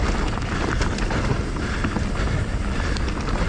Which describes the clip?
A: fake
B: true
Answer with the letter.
B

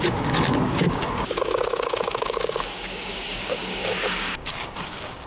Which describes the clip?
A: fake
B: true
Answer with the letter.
A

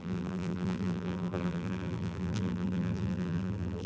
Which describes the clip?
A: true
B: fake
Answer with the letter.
B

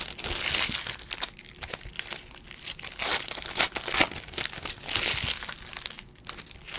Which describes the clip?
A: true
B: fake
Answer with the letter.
A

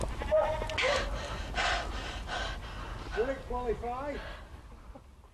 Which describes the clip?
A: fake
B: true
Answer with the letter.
B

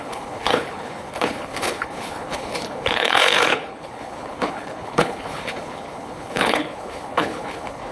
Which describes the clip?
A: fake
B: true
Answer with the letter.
A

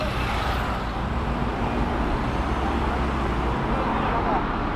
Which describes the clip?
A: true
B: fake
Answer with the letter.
A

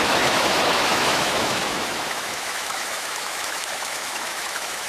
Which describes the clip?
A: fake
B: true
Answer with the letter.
A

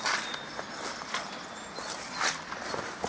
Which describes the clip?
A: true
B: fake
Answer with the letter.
A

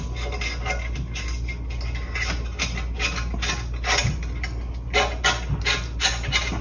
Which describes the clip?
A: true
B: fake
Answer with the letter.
A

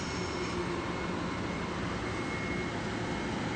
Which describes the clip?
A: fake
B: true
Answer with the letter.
B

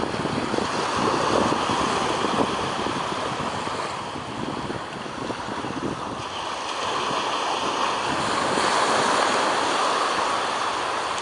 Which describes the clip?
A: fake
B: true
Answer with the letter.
B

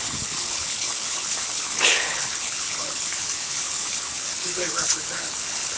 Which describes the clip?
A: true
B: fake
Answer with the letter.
B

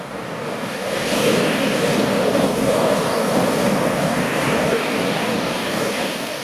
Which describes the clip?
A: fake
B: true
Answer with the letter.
A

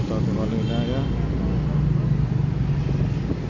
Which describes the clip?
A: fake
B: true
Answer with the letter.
B